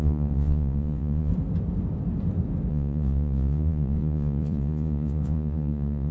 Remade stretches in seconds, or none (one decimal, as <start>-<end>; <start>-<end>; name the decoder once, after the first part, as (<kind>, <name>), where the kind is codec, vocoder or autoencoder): 0.0-1.3 (vocoder, Vocos); 2.7-6.1